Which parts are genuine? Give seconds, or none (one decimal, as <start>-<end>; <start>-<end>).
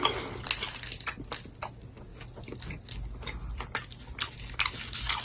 0.0-5.2